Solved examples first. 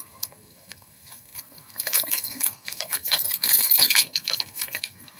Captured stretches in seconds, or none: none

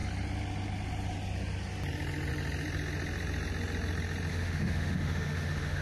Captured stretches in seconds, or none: 0.0-4.3

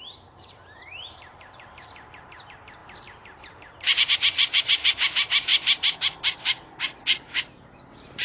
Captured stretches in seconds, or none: none

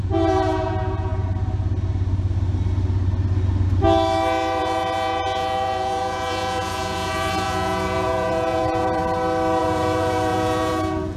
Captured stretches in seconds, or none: 1.1-4.6; 9.0-9.6

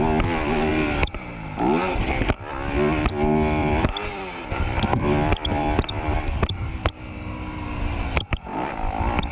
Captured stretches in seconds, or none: 0.0-3.6; 6.7-8.5

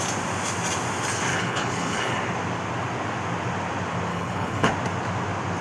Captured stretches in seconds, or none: 0.0-1.3; 2.2-4.1; 4.7-5.6

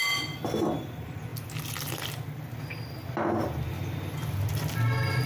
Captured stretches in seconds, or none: 0.0-5.3